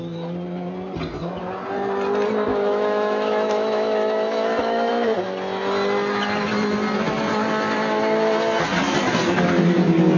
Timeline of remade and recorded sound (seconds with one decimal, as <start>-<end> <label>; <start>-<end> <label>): 0.0-2.5 recorded; 2.5-4.9 remade; 4.9-10.2 recorded